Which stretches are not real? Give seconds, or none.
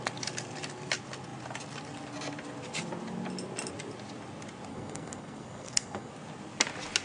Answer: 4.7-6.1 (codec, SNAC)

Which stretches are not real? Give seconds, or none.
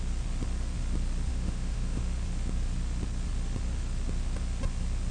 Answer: 1.3-2.0 (autoencoder, DAC-VAE)